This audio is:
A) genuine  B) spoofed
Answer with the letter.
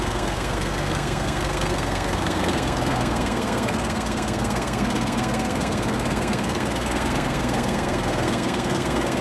B